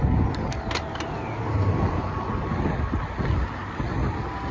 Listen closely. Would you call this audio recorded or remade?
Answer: recorded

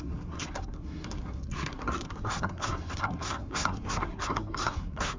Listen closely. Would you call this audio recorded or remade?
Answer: remade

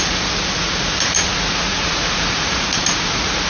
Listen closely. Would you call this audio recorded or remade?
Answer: remade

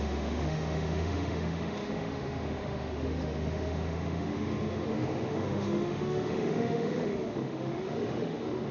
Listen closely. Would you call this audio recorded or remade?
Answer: remade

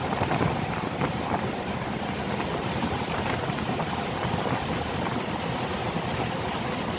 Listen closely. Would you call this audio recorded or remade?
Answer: remade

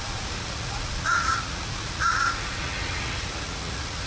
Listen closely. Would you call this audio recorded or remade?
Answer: remade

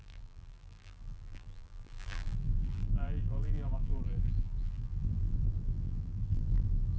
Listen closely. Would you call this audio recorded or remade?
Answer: remade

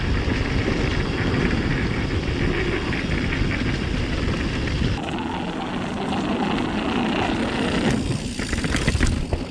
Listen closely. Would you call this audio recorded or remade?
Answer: recorded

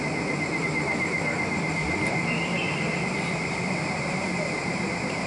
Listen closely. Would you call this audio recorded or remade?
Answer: recorded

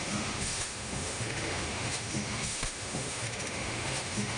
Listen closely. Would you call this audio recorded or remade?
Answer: remade